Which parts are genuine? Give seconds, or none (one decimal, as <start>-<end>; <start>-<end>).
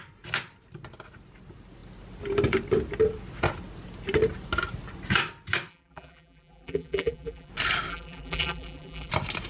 0.0-5.7; 7.5-7.9; 9.1-9.5